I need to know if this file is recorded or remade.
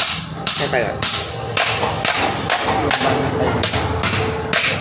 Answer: recorded